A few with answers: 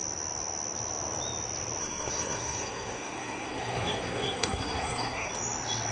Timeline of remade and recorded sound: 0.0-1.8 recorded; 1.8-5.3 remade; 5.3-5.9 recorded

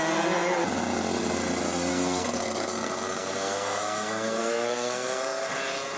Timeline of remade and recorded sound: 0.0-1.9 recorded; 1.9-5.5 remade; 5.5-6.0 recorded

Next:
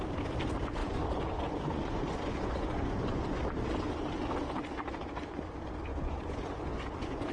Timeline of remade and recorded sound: 0.0-0.8 recorded; 0.8-3.4 remade; 3.4-5.9 recorded; 5.9-7.3 remade

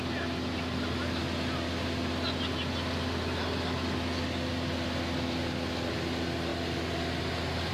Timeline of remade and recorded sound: 0.0-7.7 recorded

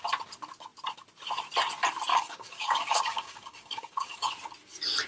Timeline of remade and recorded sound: 0.0-2.1 recorded; 2.1-4.3 remade; 4.3-5.1 recorded

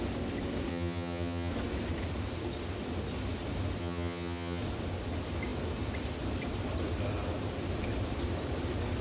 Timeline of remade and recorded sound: 0.0-0.7 recorded; 0.7-1.5 remade; 1.5-3.8 recorded; 3.8-4.6 remade; 4.6-9.0 recorded